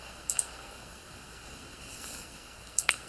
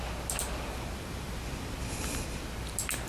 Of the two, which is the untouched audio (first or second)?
second